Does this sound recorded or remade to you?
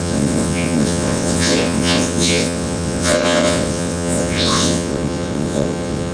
remade